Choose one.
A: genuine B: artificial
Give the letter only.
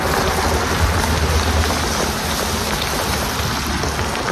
A